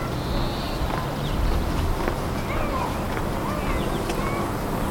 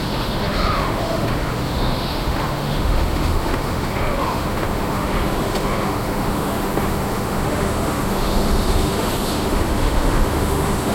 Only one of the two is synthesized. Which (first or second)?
second